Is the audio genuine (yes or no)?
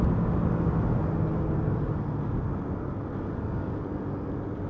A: yes